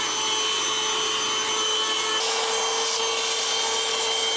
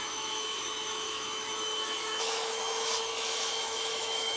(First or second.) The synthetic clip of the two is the second